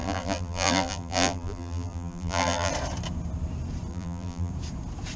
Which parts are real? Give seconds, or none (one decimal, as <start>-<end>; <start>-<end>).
2.7-3.9; 4.5-5.2